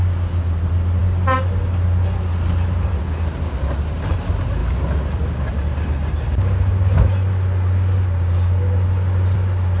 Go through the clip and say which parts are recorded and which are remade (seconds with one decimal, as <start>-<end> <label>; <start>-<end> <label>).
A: 0.0-9.8 recorded

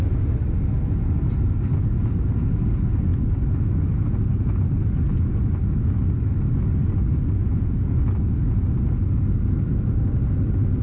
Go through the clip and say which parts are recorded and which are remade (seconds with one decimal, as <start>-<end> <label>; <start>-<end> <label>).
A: 0.0-7.4 recorded; 7.4-8.0 remade; 8.0-10.8 recorded

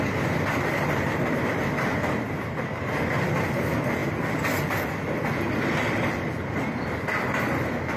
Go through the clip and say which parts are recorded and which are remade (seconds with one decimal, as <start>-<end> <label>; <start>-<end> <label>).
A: 0.0-8.0 recorded